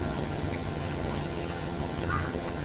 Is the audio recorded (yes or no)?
no